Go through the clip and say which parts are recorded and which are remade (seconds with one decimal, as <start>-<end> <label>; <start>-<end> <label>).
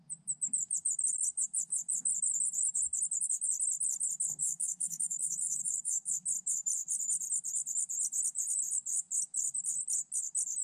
0.0-4.4 recorded; 4.4-6.1 remade; 6.1-10.6 recorded